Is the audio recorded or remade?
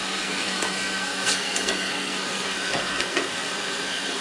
remade